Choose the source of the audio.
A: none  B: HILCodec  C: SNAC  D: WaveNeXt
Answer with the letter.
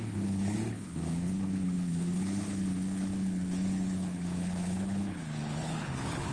B